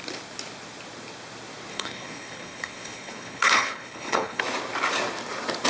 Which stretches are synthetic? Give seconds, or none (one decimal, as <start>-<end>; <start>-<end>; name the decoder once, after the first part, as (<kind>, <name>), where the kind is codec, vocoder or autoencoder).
1.7-4.4 (codec, HILCodec)